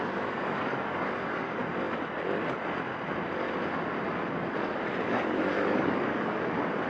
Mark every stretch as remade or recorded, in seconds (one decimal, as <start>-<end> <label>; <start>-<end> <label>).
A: 0.0-1.6 remade; 1.6-5.0 recorded; 5.0-6.9 remade